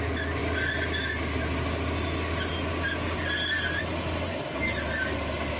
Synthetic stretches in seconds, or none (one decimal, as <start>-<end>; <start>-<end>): none